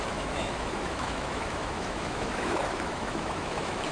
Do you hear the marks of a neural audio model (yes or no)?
yes